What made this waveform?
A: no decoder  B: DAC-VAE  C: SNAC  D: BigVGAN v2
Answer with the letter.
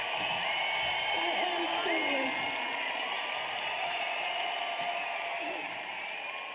D